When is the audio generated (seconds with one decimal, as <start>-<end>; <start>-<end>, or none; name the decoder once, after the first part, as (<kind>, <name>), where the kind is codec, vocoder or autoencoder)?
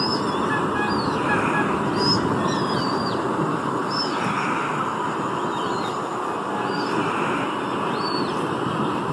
none